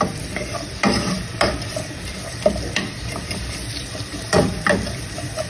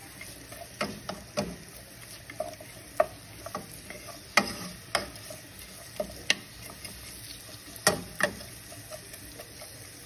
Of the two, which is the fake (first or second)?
first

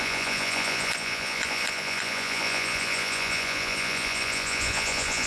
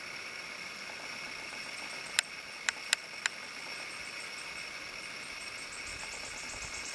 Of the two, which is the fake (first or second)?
first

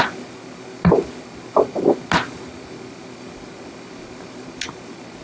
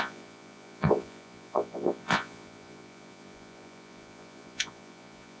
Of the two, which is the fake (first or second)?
second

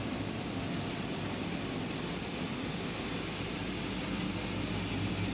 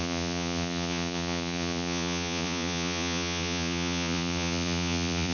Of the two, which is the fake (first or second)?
second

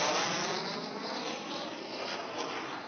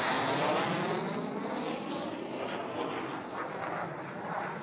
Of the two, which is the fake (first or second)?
first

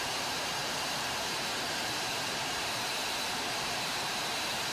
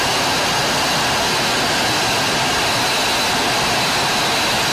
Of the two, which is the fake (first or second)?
first